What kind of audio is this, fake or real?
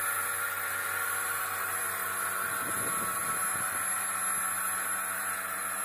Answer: real